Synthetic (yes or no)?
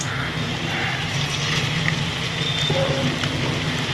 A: no